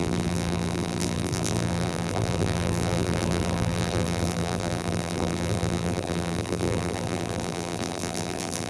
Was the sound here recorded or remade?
remade